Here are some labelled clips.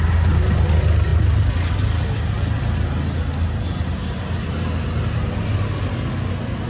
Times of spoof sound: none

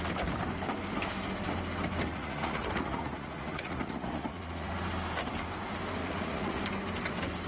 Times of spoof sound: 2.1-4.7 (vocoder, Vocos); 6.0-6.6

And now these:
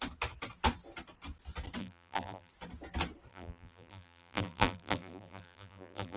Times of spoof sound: 1.8-2.5 (vocoder, BigVGAN v2); 3.3-6.2

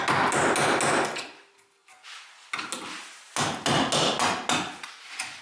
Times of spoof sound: none